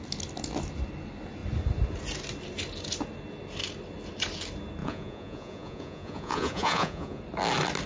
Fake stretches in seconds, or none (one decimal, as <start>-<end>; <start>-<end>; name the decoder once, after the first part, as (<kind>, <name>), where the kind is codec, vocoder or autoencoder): 4.8-7.2 (vocoder, Vocos)